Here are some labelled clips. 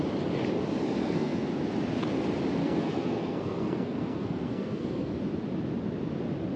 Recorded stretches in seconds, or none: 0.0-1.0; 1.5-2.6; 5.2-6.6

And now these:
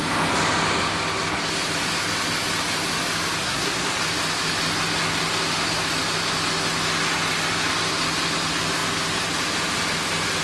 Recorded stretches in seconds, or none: 0.0-3.4; 4.0-10.4

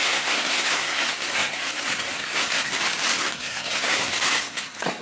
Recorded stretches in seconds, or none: 2.7-3.2